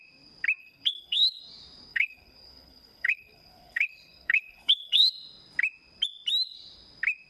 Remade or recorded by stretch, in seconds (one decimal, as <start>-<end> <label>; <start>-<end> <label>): 0.0-0.6 recorded; 0.6-1.4 remade; 1.4-1.9 recorded; 1.9-5.1 remade; 5.1-7.3 recorded